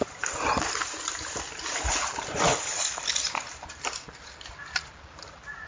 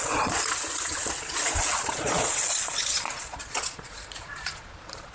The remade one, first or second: second